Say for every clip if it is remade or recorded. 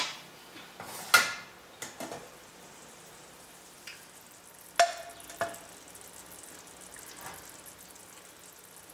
recorded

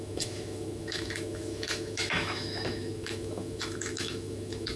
remade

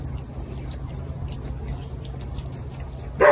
recorded